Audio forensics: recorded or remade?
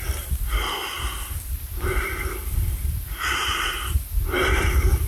remade